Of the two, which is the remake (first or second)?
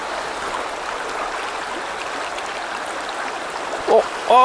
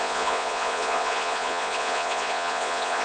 second